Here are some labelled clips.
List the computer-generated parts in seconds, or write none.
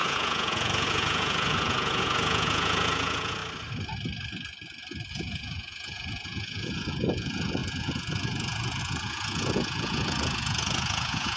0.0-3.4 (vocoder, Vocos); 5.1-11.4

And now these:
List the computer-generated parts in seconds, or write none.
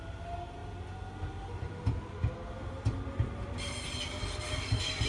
none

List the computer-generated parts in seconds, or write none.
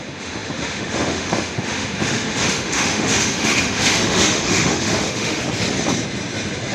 0.0-5.4 (autoencoder, DAC-VAE)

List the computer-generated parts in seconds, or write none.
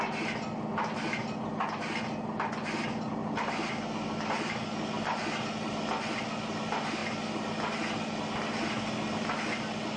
3.2-3.7 (vocoder, BigVGAN v2)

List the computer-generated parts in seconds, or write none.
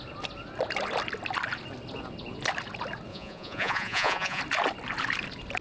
3.1-4.4 (vocoder, Vocos)